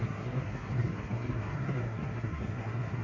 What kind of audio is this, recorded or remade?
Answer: remade